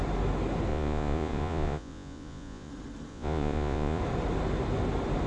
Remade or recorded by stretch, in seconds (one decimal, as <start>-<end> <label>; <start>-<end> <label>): 0.0-0.7 recorded; 0.7-2.7 remade; 2.7-3.1 recorded; 3.1-4.0 remade; 4.0-5.3 recorded